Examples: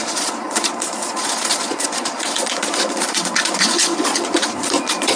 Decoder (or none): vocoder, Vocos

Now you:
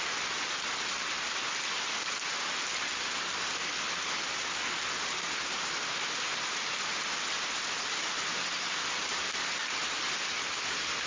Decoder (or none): none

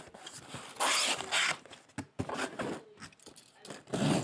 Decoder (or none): none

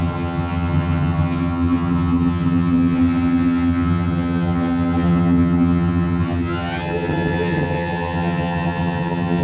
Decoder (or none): vocoder, HiFi-GAN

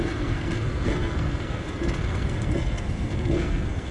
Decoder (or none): codec, SNAC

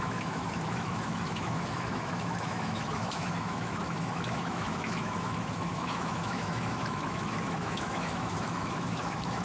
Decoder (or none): autoencoder, DAC-VAE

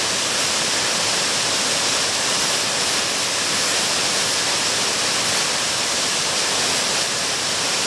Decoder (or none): none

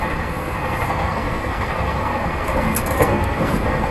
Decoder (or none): codec, SNAC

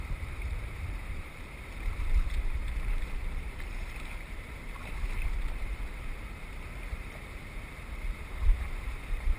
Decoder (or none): vocoder, BigVGAN v2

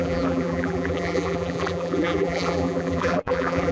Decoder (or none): vocoder, BigVGAN v2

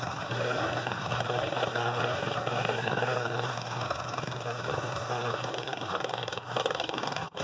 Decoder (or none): codec, SNAC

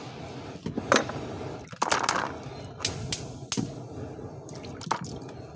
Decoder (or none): none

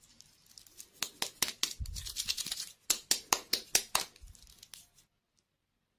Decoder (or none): none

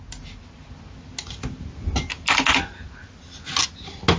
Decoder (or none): none